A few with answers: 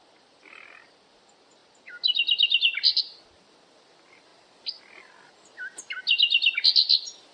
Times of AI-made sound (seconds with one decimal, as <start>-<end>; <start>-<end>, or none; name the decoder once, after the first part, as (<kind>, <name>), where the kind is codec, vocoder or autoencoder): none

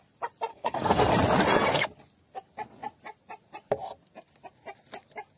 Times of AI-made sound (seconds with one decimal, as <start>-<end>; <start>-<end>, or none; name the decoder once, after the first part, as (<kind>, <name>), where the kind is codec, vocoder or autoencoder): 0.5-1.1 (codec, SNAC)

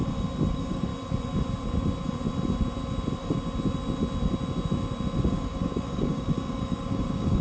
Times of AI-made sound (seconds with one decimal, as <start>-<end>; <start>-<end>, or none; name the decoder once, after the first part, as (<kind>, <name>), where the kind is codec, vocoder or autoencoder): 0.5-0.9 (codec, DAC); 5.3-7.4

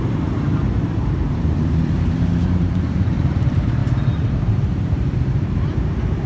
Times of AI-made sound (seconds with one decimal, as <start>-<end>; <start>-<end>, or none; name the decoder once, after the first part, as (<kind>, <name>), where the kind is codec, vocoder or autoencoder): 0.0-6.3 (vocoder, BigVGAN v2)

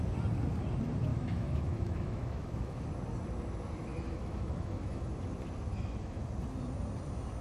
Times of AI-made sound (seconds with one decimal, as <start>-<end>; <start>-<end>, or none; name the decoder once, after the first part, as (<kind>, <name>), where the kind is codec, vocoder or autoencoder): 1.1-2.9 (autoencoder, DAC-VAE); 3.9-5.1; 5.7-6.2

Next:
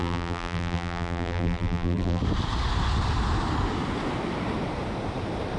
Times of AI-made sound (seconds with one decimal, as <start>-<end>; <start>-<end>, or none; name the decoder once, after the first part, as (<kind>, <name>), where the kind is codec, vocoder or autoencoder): 0.0-2.2 (vocoder, BigVGAN v2)

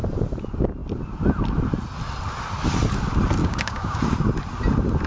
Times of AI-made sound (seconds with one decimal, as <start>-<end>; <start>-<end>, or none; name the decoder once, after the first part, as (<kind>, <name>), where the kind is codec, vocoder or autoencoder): 3.4-4.0 (codec, DAC)

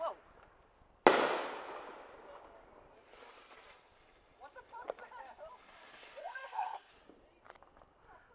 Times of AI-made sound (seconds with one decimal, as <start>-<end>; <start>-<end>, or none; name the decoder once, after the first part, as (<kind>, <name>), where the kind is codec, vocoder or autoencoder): 6.2-6.9 (codec, SNAC)